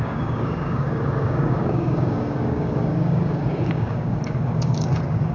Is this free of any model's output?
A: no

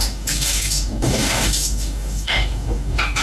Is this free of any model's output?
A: no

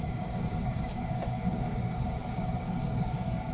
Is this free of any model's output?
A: no